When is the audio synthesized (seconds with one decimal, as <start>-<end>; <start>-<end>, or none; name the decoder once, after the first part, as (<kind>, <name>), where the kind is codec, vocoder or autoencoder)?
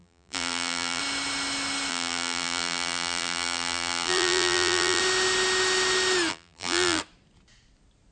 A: 0.0-1.0 (vocoder, BigVGAN v2); 1.9-5.0; 6.3-7.0